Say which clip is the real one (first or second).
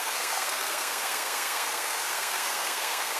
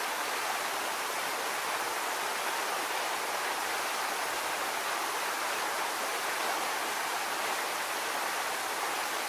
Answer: second